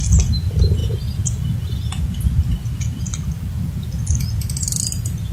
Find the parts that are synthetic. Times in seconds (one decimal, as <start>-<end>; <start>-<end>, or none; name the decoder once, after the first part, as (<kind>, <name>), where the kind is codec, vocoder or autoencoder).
none